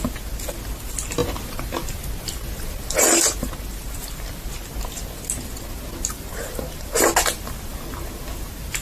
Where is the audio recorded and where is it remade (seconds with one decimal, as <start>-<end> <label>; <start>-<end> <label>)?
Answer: 0.0-8.8 recorded